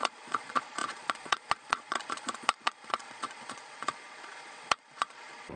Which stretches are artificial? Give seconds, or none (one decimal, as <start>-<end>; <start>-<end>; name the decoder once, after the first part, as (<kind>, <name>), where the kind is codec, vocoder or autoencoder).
0.0-5.6 (vocoder, Vocos)